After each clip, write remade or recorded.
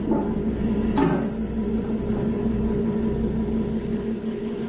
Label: recorded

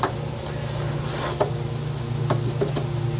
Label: recorded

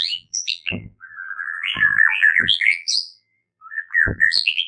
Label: remade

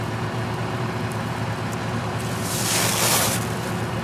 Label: recorded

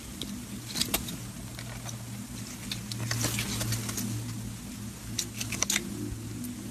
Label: recorded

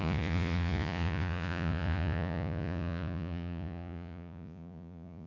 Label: remade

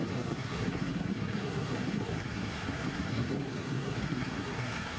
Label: remade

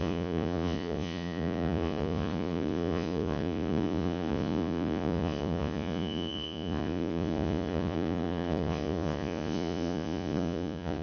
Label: remade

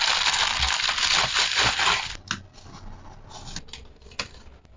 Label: recorded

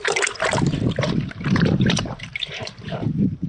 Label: remade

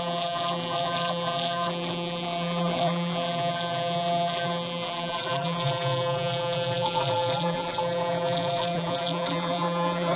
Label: remade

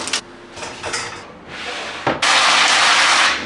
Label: recorded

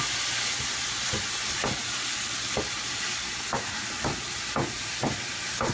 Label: recorded